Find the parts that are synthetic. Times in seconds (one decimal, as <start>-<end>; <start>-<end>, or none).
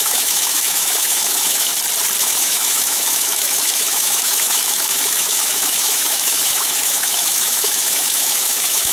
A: 0.0-1.7; 2.2-8.9